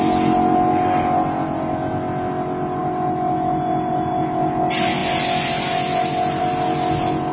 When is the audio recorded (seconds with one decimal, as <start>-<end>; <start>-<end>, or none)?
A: 0.0-7.3